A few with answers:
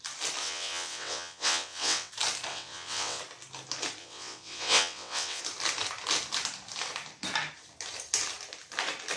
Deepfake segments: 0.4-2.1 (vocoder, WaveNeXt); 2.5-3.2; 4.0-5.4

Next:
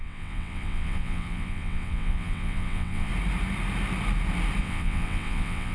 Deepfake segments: 0.0-3.1 (vocoder, WaveNeXt); 4.6-5.7

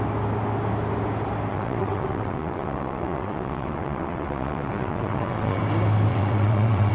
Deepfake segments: 1.5-5.6 (vocoder, WaveNeXt); 6.1-6.9

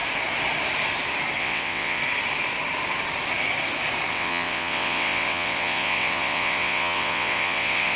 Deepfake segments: 1.4-2.0 (vocoder, WaveNeXt); 4.1-8.0

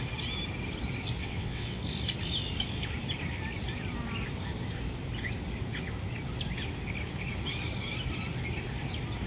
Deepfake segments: 1.2-1.8 (vocoder, WaveNeXt)

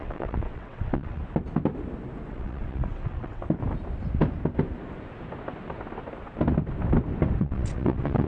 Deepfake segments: 0.0-1.2 (vocoder, WaveNeXt); 2.3-3.4; 7.4-8.3